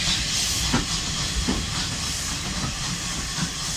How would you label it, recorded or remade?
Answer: recorded